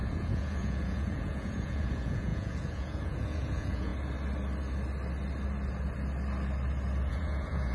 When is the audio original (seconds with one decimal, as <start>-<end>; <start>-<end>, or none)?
3.9-7.1